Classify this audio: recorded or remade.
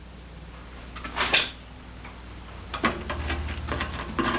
recorded